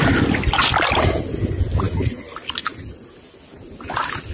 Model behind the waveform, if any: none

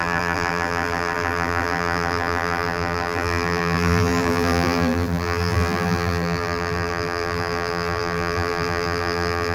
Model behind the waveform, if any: vocoder, BigVGAN v2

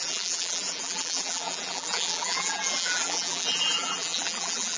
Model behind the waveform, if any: vocoder, BigVGAN v2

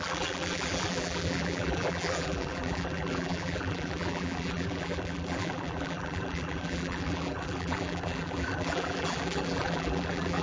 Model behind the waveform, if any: vocoder, BigVGAN v2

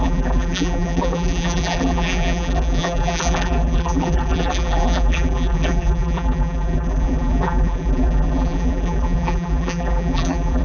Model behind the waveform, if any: vocoder, BigVGAN v2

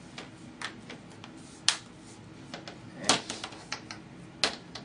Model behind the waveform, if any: none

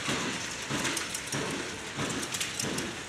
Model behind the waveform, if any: none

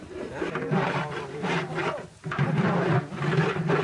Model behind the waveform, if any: vocoder, BigVGAN v2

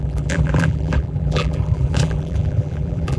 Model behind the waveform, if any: vocoder, BigVGAN v2